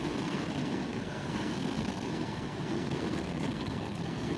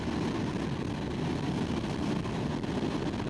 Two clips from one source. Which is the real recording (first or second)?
second